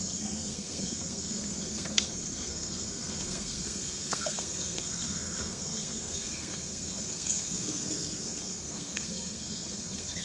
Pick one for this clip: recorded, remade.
remade